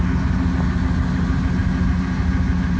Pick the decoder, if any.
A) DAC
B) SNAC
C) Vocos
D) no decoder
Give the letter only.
D